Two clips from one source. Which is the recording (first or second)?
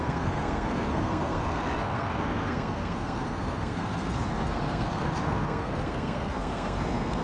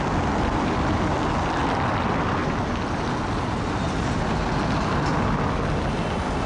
second